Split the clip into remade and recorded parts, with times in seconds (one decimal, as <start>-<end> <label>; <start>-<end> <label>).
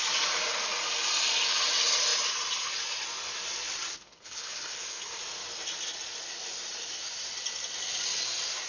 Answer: 0.0-3.9 recorded; 3.9-5.2 remade; 5.2-8.7 recorded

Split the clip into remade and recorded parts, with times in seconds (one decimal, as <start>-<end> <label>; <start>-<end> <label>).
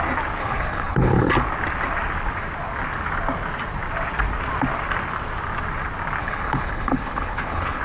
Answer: 0.0-0.4 recorded; 0.4-1.3 remade; 1.3-6.2 recorded; 6.2-7.8 remade